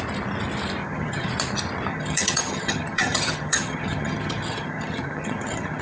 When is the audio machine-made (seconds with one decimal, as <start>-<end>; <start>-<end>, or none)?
0.8-1.3; 1.9-5.8